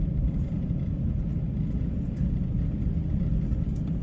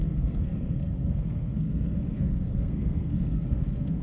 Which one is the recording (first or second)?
first